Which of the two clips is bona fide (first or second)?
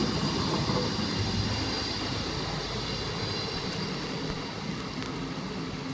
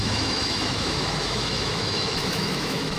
first